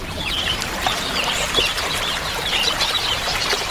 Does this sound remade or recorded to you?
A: remade